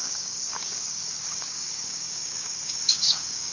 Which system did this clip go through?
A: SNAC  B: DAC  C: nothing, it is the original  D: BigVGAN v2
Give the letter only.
B